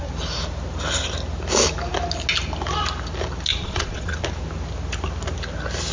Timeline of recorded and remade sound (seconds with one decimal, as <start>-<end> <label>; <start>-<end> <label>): 0.0-3.5 recorded; 3.5-4.2 remade; 4.2-5.9 recorded